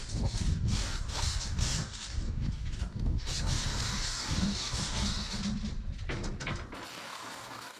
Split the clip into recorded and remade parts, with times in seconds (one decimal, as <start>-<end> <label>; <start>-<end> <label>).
0.0-5.4 remade; 5.4-6.9 recorded; 6.9-7.8 remade